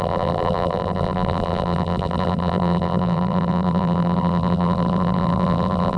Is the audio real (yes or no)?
no